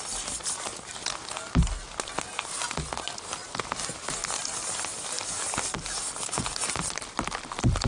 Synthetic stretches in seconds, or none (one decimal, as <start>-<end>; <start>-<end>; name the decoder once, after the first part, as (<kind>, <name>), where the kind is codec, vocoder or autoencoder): none